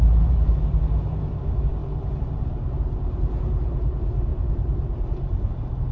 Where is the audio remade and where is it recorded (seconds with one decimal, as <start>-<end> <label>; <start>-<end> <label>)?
0.0-5.9 remade